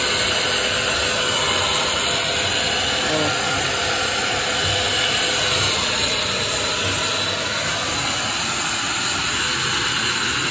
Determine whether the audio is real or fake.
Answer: real